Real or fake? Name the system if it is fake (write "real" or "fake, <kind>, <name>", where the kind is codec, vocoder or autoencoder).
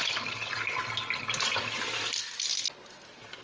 real